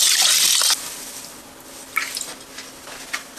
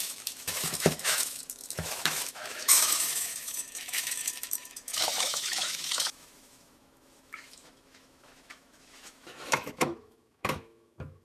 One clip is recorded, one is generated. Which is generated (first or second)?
second